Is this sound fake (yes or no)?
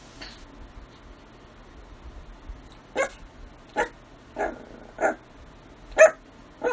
no